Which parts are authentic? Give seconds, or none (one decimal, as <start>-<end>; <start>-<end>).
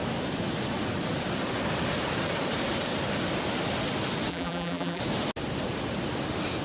0.0-4.3; 5.0-6.6